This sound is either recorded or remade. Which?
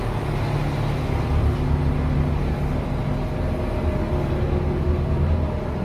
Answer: recorded